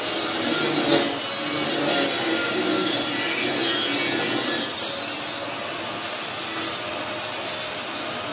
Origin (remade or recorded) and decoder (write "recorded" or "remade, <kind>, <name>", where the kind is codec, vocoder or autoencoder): recorded